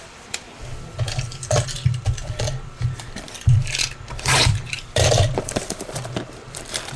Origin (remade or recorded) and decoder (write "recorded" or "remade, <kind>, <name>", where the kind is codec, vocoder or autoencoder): remade, vocoder, BigVGAN v2